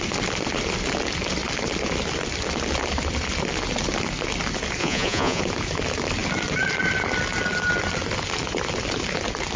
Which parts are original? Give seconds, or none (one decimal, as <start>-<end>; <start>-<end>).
0.0-4.8; 5.4-9.6